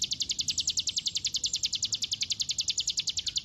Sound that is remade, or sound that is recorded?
recorded